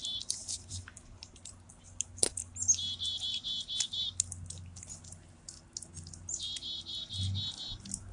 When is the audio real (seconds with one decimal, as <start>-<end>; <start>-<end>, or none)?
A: 1.7-8.1